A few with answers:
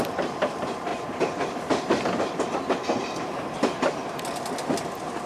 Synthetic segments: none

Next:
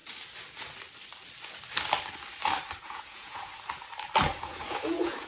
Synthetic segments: 2.8-3.5 (vocoder, Vocos); 4.4-5.3